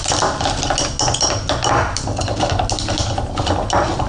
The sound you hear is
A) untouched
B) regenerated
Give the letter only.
A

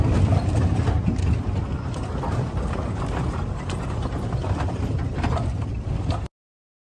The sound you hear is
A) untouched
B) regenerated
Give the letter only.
A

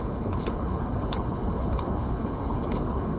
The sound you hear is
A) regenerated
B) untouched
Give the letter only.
A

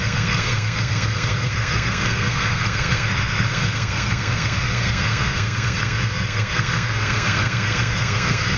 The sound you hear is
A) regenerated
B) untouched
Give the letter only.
A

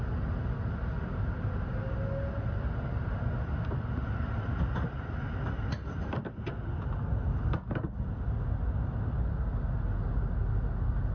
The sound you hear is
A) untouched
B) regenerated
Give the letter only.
A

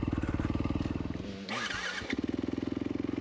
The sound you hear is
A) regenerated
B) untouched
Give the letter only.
B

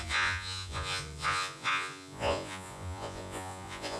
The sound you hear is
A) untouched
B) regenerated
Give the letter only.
B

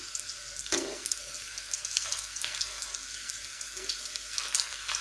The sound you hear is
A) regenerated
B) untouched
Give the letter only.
A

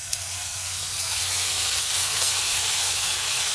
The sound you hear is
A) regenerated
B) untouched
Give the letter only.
A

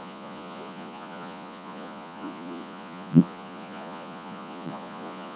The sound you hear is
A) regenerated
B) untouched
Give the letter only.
A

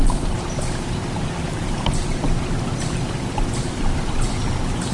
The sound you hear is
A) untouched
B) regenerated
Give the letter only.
B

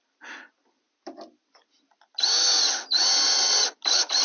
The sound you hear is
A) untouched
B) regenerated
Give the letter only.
A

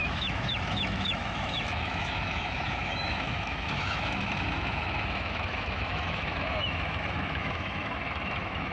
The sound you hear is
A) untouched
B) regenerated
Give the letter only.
B